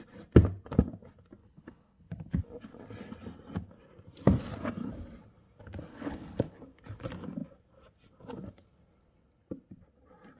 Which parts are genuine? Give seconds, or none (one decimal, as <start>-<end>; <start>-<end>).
0.0-1.4; 2.4-5.9; 6.6-10.4